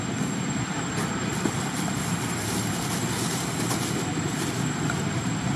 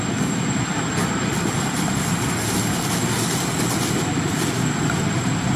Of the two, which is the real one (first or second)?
second